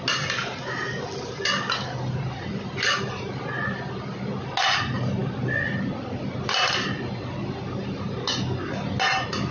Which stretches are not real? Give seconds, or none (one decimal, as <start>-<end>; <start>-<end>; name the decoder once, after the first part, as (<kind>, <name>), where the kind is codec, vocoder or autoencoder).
none